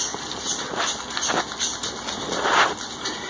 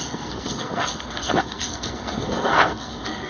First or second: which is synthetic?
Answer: second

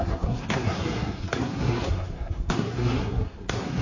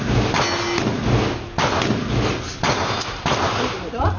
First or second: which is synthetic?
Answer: first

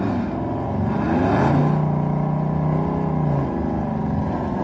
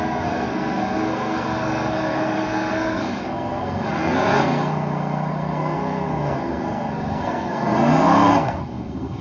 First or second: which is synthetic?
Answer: second